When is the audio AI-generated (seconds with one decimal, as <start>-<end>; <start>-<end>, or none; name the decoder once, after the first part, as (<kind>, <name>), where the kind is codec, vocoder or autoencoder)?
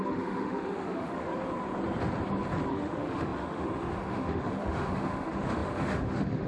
0.0-1.3 (autoencoder, DAC-VAE); 2.7-6.5